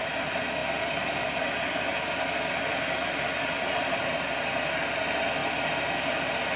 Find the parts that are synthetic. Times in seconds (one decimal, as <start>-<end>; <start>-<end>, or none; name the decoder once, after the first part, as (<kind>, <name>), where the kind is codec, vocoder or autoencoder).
none